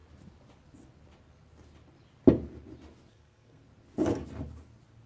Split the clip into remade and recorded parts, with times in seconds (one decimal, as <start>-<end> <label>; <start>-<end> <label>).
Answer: 0.0-3.1 recorded; 3.1-3.6 remade; 3.6-5.1 recorded